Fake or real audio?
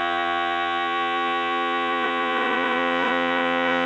fake